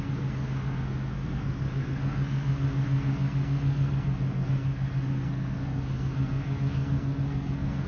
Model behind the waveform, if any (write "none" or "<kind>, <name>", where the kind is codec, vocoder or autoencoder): codec, SNAC